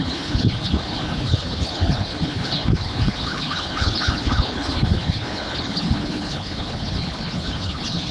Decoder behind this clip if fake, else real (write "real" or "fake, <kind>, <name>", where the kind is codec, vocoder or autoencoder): fake, codec, HILCodec